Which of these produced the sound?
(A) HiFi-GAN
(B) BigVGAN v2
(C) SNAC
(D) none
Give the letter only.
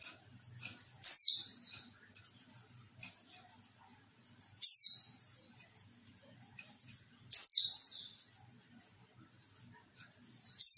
D